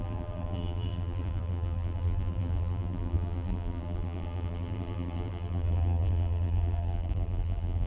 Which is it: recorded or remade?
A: remade